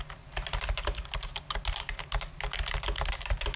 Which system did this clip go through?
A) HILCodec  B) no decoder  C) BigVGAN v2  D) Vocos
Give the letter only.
B